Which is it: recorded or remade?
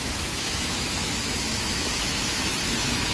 remade